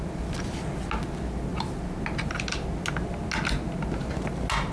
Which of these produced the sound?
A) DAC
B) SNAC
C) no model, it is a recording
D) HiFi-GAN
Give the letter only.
C